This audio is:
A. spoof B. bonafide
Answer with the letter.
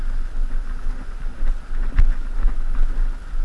B